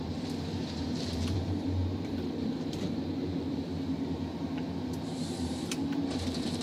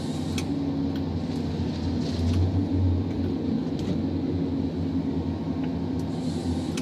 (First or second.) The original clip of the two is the second